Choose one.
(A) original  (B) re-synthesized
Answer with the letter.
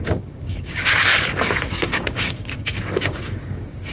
B